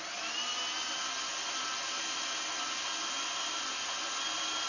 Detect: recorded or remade recorded